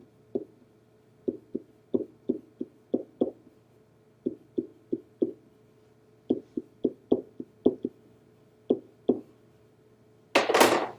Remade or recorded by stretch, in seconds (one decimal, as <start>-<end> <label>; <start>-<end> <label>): 0.0-11.0 recorded

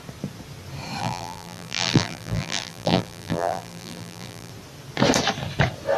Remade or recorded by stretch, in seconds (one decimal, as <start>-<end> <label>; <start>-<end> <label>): 0.0-1.0 recorded; 1.0-4.5 remade; 4.5-6.0 recorded

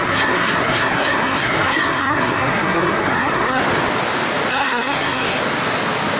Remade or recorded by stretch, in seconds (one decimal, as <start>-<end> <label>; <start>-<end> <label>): 0.0-3.6 remade; 3.6-4.5 recorded; 4.5-5.4 remade; 5.4-6.2 recorded

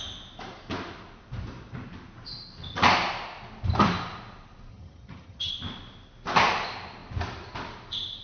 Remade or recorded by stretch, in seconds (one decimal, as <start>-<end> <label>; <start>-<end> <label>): 0.0-4.7 recorded; 4.7-5.5 remade; 5.5-8.2 recorded

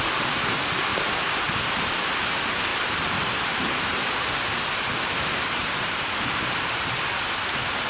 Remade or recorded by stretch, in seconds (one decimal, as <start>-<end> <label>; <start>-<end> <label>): 0.0-0.9 recorded; 0.9-1.9 remade; 1.9-2.7 recorded; 2.7-4.6 remade; 4.6-5.6 recorded; 5.6-6.7 remade; 6.7-7.9 recorded

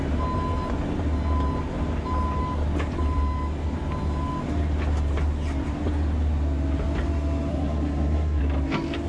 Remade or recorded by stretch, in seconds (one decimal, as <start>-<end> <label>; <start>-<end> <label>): 0.0-7.5 recorded; 7.5-8.4 remade; 8.4-9.1 recorded

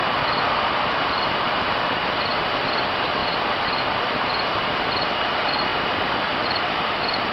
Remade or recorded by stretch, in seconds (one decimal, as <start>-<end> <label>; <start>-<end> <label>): 0.0-0.7 recorded; 0.7-2.3 remade; 2.3-2.8 recorded; 2.8-3.2 remade; 3.2-4.0 recorded; 4.0-7.3 remade